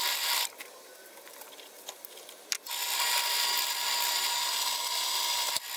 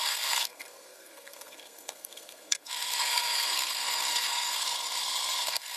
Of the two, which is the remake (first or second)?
second